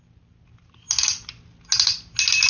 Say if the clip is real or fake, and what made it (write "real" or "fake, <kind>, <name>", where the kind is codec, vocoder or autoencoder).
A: real